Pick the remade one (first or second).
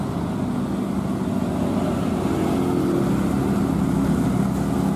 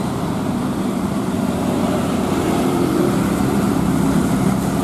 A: second